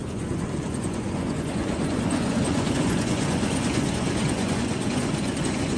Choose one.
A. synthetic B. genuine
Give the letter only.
A